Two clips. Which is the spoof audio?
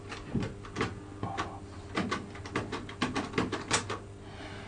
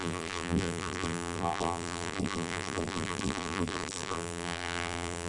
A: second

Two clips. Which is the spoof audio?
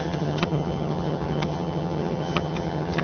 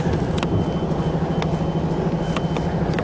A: first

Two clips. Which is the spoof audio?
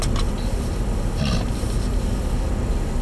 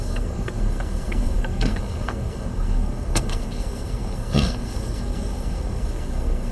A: second